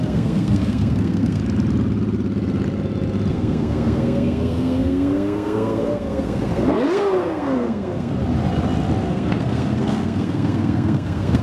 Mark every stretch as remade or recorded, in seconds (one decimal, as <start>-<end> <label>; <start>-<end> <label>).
0.0-1.4 remade; 1.4-3.3 recorded; 3.3-8.1 remade; 8.1-9.1 recorded; 9.1-11.4 remade